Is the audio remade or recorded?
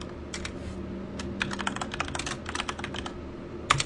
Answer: recorded